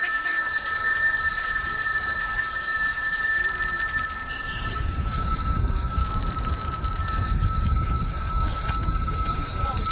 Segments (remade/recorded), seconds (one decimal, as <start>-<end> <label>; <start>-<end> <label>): 0.0-3.4 remade; 3.4-4.3 recorded; 4.3-6.0 remade; 6.0-7.1 recorded; 7.1-9.9 remade

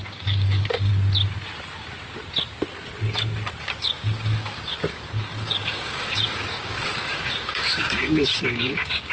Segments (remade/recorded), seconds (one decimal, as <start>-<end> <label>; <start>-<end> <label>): 0.0-0.9 remade; 0.9-3.6 recorded; 3.6-9.1 remade

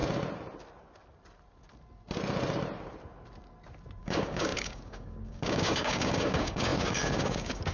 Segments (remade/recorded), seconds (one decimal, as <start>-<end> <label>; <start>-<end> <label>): 0.0-4.0 recorded; 4.0-7.7 remade

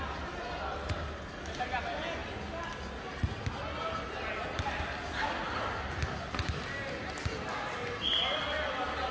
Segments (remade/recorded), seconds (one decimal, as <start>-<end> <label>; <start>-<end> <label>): 0.0-9.1 recorded

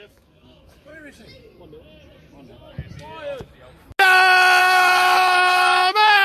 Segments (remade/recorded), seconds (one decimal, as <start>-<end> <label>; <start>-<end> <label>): 0.0-0.9 remade; 0.9-4.6 recorded; 4.6-6.2 remade

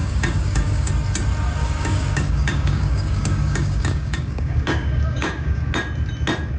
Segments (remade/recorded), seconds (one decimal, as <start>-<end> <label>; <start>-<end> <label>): 0.0-0.9 remade; 0.9-1.6 recorded; 1.6-5.6 remade; 5.6-6.6 recorded